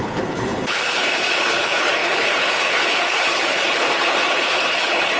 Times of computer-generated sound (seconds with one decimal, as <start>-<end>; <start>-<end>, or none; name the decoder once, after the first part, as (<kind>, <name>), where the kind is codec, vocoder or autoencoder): 0.0-5.2 (codec, HILCodec)